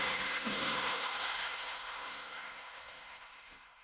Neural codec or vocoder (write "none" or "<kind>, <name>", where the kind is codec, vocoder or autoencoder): codec, SNAC